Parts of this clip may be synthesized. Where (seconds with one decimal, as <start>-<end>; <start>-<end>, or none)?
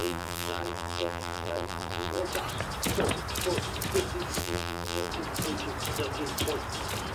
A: 0.0-2.2; 4.4-5.1